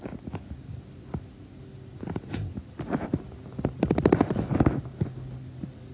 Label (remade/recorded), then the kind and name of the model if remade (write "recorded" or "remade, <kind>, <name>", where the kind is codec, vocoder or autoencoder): recorded